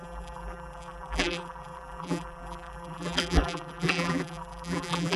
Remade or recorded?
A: remade